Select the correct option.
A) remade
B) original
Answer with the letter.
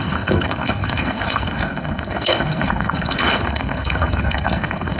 A